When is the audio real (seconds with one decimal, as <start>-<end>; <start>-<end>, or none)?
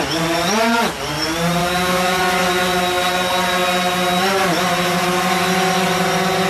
0.0-1.6; 2.2-6.5